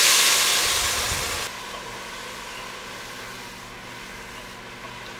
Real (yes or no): yes